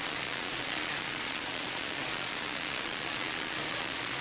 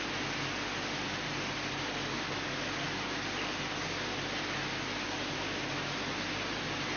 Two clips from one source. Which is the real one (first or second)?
second